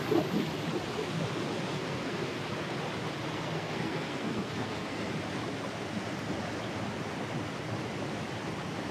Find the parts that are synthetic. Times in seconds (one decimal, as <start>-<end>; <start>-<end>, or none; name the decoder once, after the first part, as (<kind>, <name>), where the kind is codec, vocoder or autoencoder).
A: 1.7-2.4 (codec, SNAC); 3.3-5.1